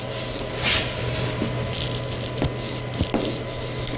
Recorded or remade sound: recorded